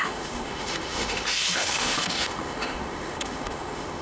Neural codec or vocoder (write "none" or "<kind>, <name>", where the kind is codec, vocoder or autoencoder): autoencoder, DAC-VAE